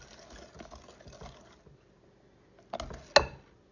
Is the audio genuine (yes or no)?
yes